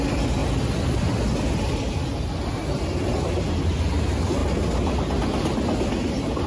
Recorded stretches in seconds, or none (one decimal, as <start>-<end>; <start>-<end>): 0.0-6.5

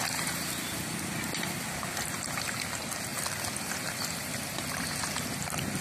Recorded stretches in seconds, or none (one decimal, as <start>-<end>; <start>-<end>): 0.0-5.8

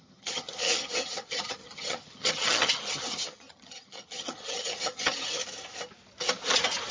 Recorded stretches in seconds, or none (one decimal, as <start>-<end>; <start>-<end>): 5.4-6.9

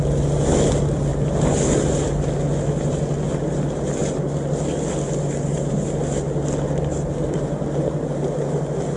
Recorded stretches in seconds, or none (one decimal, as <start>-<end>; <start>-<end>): 0.0-9.0